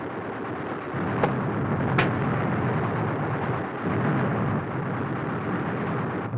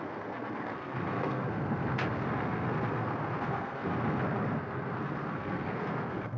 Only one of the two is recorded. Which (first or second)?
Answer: first